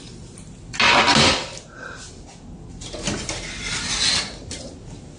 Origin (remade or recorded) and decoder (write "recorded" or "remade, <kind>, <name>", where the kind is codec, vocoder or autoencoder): recorded